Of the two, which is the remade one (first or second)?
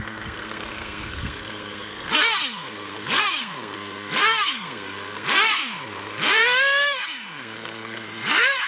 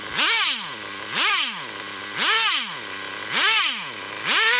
first